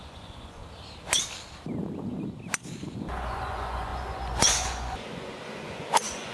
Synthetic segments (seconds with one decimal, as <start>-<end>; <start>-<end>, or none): 0.0-0.6; 2.8-6.3